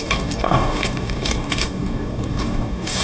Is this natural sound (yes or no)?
no